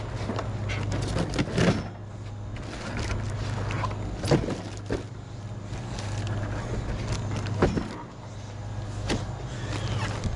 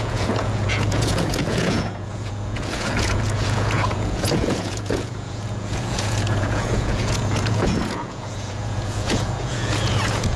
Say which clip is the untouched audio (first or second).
first